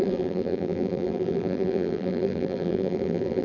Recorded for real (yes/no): no